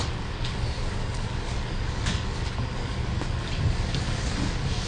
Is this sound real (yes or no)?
no